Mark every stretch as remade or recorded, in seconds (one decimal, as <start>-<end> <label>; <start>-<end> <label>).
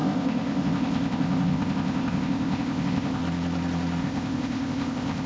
0.0-3.2 remade; 3.2-4.0 recorded; 4.0-5.3 remade